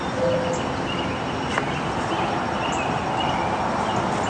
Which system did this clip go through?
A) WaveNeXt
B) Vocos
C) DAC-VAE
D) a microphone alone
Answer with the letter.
D